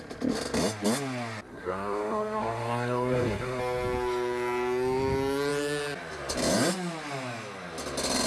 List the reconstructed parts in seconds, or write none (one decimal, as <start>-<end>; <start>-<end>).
1.5-3.6